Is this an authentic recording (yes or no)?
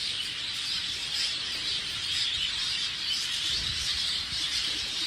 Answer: no